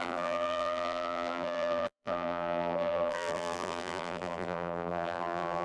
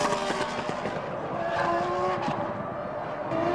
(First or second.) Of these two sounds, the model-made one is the first